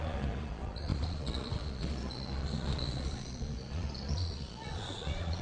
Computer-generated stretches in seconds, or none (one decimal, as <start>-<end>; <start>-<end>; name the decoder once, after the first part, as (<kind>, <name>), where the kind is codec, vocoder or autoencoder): 0.0-5.4 (vocoder, Vocos)